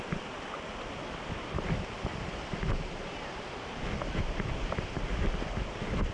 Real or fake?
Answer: real